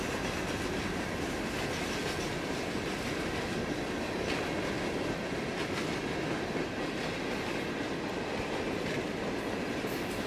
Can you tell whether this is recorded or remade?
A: recorded